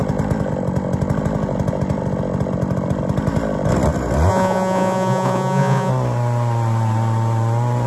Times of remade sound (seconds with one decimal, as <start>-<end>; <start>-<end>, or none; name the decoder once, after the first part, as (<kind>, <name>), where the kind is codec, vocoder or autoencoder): 4.3-5.9 (vocoder, Vocos)